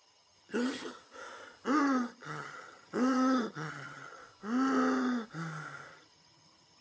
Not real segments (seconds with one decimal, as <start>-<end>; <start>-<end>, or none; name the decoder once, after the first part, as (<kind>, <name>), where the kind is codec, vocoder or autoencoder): 0.0-1.0 (vocoder, HiFi-GAN); 1.8-4.2; 5.9-6.8